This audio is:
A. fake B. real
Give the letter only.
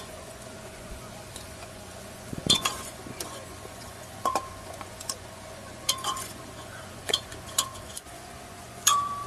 A